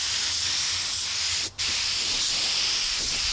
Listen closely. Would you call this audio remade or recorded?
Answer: recorded